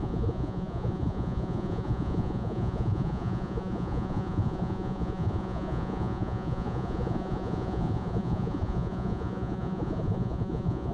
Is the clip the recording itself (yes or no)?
no